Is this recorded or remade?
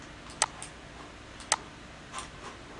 recorded